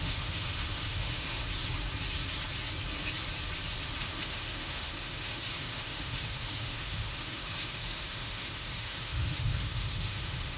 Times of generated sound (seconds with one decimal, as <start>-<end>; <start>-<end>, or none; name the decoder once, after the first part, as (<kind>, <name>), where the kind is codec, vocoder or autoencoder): 0.0-1.4 (autoencoder, DAC-VAE); 4.0-10.6